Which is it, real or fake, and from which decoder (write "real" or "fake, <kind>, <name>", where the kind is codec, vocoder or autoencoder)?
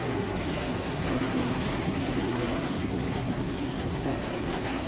fake, codec, SNAC